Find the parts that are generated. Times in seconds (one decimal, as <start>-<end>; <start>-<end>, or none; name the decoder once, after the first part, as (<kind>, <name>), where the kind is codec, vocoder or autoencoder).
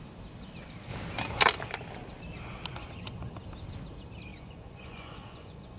2.7-3.3 (vocoder, Vocos); 4.3-5.8